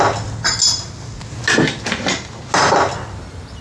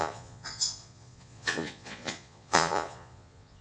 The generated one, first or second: second